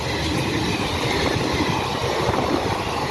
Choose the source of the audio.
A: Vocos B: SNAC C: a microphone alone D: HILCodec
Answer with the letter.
C